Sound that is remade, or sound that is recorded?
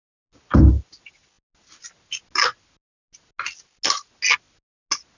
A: recorded